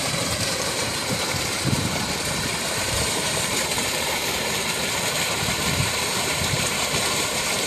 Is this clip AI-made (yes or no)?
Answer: yes